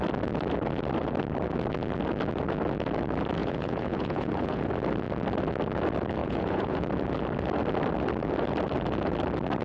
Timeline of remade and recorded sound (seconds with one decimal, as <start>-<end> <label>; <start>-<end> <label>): 0.0-3.4 recorded; 3.4-4.7 remade; 4.7-6.2 recorded; 6.2-6.8 remade; 6.8-9.6 recorded